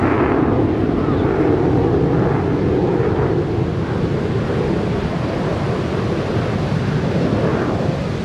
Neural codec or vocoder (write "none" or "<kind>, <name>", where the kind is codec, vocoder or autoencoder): none